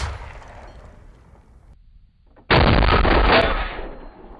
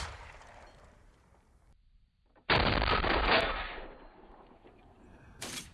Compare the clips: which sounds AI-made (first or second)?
second